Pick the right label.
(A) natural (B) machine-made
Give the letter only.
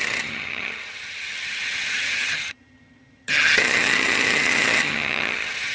B